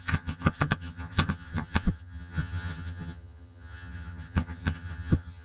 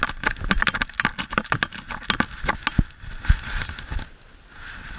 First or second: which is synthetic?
first